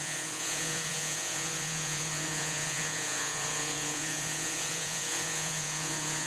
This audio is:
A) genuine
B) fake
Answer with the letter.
B